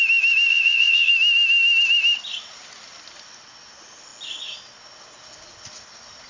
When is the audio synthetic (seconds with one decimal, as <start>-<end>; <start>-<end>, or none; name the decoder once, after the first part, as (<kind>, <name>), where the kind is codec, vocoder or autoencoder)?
0.5-1.1 (vocoder, Vocos)